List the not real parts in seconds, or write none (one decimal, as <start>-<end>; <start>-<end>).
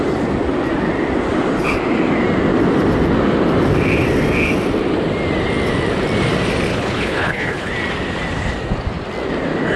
6.7-7.7